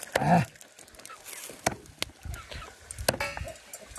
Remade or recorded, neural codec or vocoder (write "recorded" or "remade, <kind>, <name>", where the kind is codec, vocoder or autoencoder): recorded